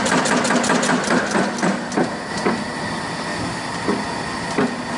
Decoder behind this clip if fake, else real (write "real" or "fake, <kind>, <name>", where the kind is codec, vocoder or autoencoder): real